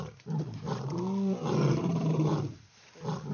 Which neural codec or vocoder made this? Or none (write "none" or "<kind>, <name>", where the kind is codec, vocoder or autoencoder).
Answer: none